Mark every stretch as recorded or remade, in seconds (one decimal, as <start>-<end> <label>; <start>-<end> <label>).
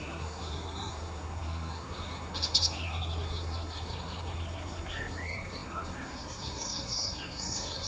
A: 0.0-7.9 remade